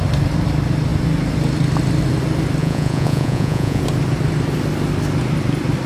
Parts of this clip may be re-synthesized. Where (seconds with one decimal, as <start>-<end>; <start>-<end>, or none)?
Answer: 2.6-3.8